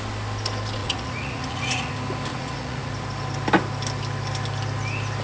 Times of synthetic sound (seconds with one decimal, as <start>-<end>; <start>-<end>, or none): 0.8-1.9; 2.3-2.9